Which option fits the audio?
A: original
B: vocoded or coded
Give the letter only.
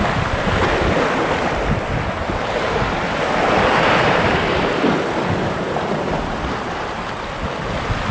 B